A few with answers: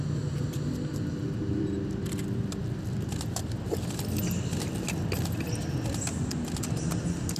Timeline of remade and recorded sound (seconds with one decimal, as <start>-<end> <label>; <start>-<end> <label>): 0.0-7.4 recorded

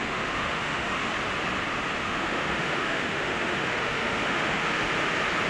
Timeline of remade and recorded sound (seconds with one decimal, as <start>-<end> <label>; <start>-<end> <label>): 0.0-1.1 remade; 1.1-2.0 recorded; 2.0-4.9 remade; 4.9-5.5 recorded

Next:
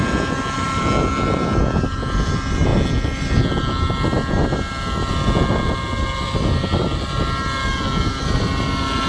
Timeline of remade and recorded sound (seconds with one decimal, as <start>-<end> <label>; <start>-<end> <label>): 0.0-9.1 recorded

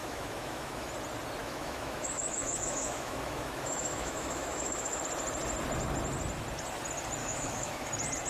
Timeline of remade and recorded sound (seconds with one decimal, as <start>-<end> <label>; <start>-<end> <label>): 0.0-0.9 remade; 0.9-1.4 recorded; 1.4-5.0 remade; 5.0-7.2 recorded; 7.2-7.9 remade; 7.9-8.3 recorded

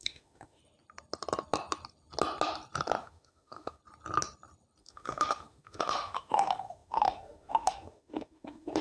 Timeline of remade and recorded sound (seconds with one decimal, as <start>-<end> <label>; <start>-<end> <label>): 0.0-0.6 remade; 0.6-3.0 recorded; 3.0-3.8 remade; 3.8-4.8 recorded; 4.8-8.8 remade

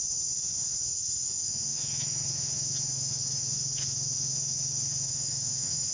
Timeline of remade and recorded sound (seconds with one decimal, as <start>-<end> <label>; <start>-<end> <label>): 0.0-5.9 remade

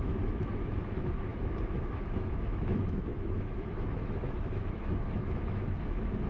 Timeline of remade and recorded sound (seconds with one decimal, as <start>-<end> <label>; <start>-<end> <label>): 0.0-6.3 remade

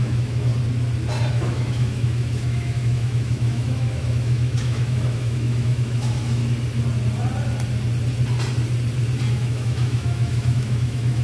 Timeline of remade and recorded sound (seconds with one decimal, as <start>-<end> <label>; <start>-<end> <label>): 0.0-0.5 remade; 0.5-1.3 recorded; 1.3-6.4 remade; 6.4-9.3 recorded; 9.3-11.2 remade